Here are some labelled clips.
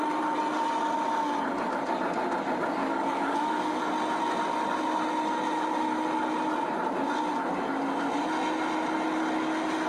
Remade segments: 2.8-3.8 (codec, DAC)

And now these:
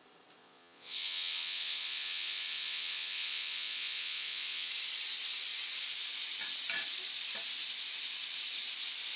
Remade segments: 0.4-4.7 (vocoder, Vocos)

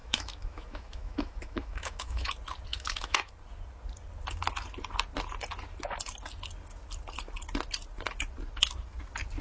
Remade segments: 0.0-2.3 (autoencoder, DAC-VAE); 2.7-3.3

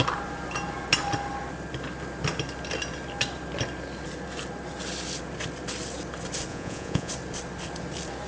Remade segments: 6.5-7.1 (vocoder, Vocos)

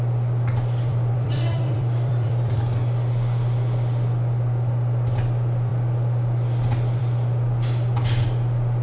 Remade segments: 0.9-2.6 (vocoder, BigVGAN v2)

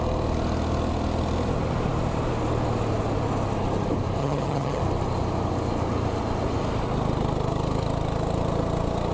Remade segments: 4.2-4.8 (vocoder, HiFi-GAN)

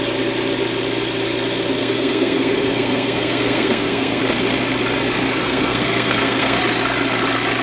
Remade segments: 1.8-4.2 (codec, SNAC); 5.4-6.6